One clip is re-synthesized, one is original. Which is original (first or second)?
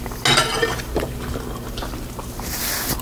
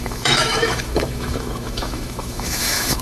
first